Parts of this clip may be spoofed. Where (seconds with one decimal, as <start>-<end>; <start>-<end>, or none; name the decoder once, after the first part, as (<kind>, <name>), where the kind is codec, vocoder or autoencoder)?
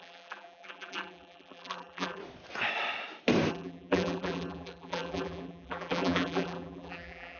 0.0-2.2 (vocoder, BigVGAN v2); 3.5-7.4